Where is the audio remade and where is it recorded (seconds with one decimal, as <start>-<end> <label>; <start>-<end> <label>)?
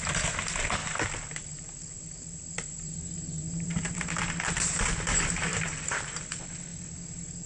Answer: 0.0-0.8 recorded; 0.8-4.2 remade; 4.2-5.5 recorded; 5.5-6.2 remade; 6.2-7.5 recorded